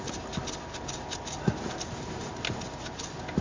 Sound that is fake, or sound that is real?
real